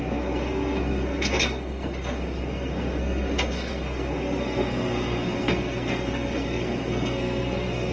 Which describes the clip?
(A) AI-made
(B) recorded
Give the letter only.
A